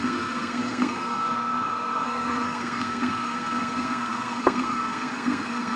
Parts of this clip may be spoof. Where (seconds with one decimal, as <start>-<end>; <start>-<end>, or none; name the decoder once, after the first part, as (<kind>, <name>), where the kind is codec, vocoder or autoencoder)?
0.0-5.8 (codec, SNAC)